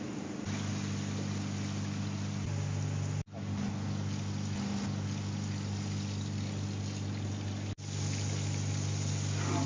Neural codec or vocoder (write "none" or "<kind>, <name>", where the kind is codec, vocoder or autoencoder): none